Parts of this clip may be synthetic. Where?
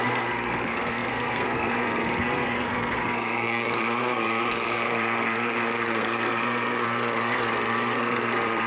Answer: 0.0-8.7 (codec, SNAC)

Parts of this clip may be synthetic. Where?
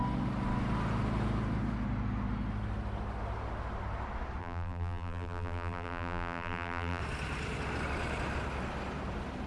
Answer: 4.4-7.0 (vocoder, BigVGAN v2)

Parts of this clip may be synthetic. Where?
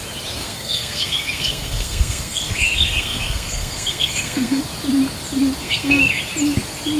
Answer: 0.4-4.6 (codec, SNAC); 5.6-6.2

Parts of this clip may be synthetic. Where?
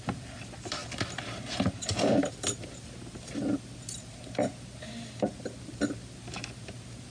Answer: none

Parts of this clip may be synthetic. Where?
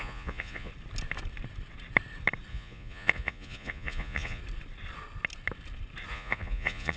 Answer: 0.0-0.7 (vocoder, Vocos); 2.5-4.4; 6.1-7.0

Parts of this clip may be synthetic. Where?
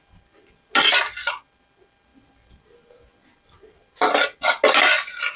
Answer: none